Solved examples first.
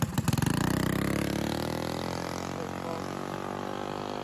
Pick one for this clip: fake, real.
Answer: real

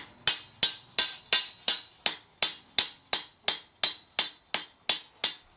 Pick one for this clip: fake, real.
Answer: real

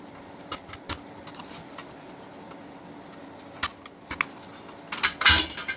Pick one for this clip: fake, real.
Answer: real